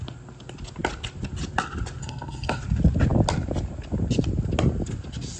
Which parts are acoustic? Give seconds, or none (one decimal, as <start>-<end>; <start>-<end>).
0.0-2.0; 2.6-5.4